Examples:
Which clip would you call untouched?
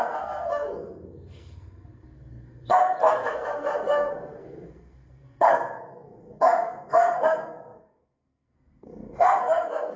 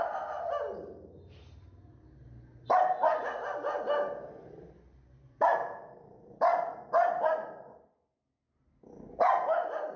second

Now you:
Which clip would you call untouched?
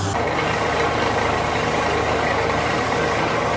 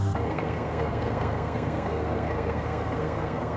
first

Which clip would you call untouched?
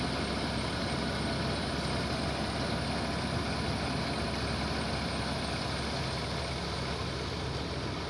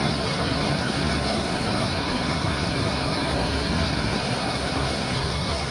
first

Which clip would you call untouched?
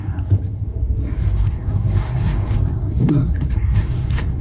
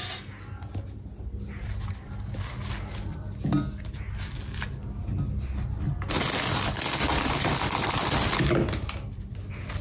second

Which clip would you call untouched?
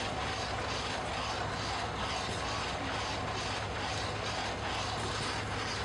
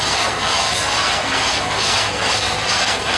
first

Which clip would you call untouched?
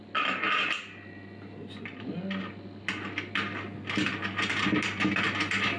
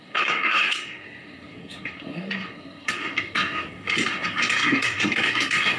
first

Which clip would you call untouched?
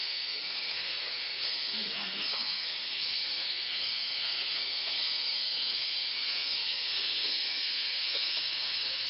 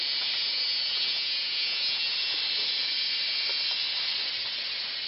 second